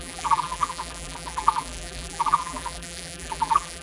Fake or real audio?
fake